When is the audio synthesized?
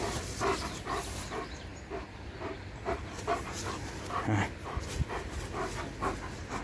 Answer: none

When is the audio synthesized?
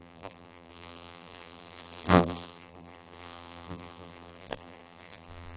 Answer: 0.0-5.6 (vocoder, BigVGAN v2)